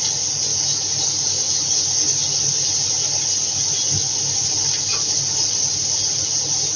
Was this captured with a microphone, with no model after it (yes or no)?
yes